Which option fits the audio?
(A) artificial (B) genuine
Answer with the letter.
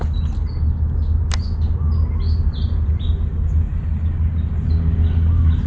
B